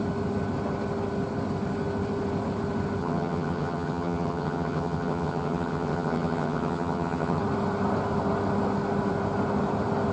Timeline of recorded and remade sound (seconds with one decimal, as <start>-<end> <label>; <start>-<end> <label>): 0.0-3.0 recorded; 3.0-7.4 remade; 7.4-10.1 recorded